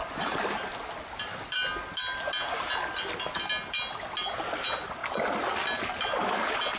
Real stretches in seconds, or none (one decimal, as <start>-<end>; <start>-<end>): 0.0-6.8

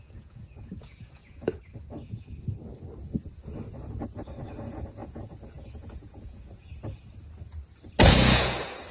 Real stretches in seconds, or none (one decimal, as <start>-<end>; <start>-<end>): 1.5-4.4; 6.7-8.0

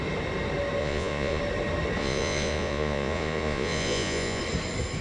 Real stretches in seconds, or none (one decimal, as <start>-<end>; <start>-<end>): 0.0-0.8; 1.4-2.0; 4.4-5.0